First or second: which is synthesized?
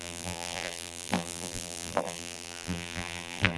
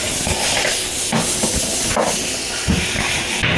first